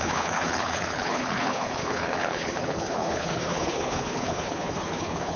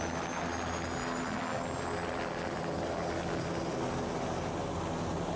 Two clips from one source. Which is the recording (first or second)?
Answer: second